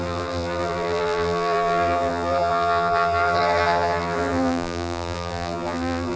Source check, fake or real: fake